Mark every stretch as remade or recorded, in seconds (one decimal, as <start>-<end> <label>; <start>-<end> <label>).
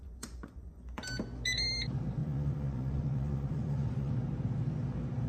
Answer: 0.0-1.0 remade; 1.0-2.2 recorded; 2.2-4.1 remade; 4.1-5.3 recorded